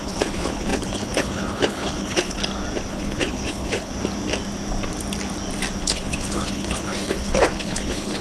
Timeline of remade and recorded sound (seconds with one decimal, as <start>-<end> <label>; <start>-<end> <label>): 0.0-2.4 remade; 2.4-2.9 recorded; 2.9-3.9 remade; 3.9-5.8 recorded; 5.8-8.2 remade

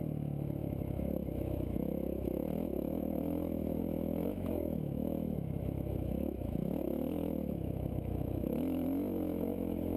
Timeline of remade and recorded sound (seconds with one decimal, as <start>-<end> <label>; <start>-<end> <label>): 0.0-10.0 remade

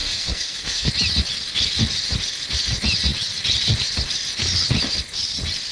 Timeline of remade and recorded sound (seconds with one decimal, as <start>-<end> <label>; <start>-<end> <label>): 0.0-0.9 remade; 0.9-5.7 recorded